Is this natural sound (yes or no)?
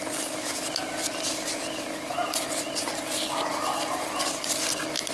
yes